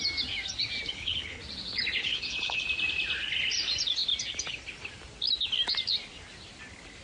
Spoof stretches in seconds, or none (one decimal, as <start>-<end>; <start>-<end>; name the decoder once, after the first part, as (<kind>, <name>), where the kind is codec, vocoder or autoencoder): 0.9-1.4 (codec, HILCodec); 2.0-2.6